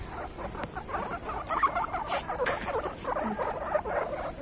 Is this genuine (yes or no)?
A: yes